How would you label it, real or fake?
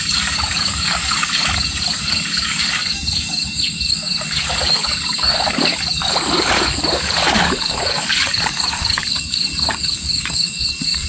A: fake